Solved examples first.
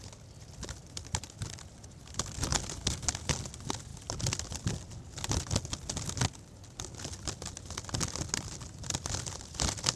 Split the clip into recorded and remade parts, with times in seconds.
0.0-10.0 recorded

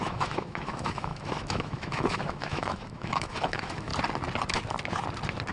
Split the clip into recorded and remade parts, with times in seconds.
0.0-3.9 remade; 3.9-5.5 recorded

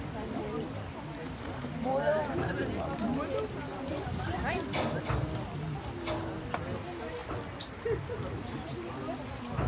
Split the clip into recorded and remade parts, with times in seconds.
0.0-9.7 recorded